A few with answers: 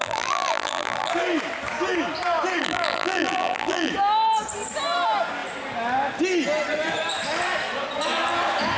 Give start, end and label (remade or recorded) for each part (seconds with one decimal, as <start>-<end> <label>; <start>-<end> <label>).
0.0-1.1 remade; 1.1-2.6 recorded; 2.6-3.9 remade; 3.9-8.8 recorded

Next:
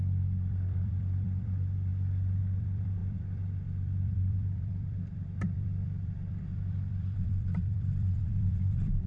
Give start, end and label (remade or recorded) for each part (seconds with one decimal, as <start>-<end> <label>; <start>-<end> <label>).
0.0-1.9 remade; 1.9-2.4 recorded; 2.4-9.1 remade

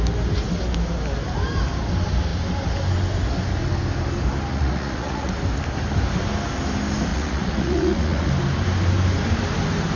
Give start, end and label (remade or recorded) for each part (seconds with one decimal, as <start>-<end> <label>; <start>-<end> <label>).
0.0-4.5 recorded; 4.5-5.3 remade; 5.3-7.1 recorded; 7.1-8.3 remade; 8.3-10.0 recorded

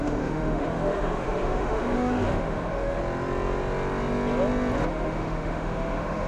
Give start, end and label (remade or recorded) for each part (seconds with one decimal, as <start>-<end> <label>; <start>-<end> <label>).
0.0-3.0 remade; 3.0-4.9 recorded; 4.9-6.3 remade